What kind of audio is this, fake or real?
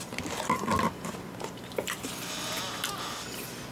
real